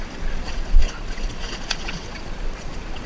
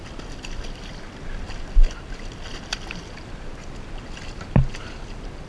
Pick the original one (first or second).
second